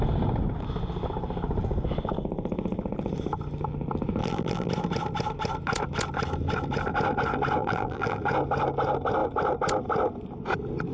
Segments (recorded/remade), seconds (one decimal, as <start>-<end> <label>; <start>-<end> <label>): 0.0-4.2 recorded; 4.2-4.7 remade; 4.7-7.6 recorded; 7.6-8.2 remade; 8.2-10.9 recorded